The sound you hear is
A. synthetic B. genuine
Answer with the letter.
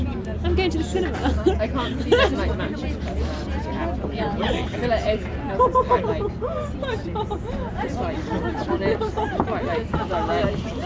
B